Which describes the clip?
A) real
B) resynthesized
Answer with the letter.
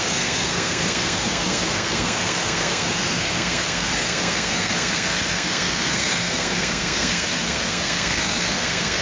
B